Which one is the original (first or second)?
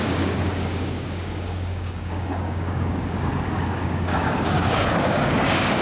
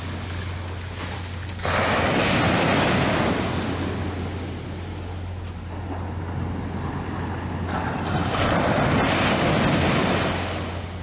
second